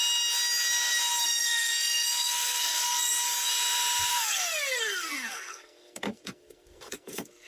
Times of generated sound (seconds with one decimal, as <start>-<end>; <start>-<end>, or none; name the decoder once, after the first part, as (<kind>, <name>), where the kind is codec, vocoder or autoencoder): 1.2-3.1 (codec, SNAC); 4.1-7.5